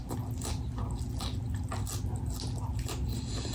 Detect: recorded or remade recorded